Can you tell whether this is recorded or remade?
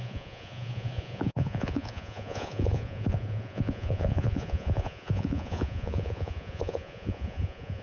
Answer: remade